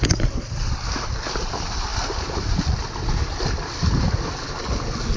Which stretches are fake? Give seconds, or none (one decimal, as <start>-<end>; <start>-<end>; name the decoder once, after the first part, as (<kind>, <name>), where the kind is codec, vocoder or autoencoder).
none